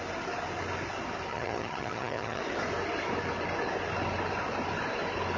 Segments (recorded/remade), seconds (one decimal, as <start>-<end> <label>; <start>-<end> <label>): 0.0-1.3 recorded; 1.3-2.4 remade; 2.4-5.4 recorded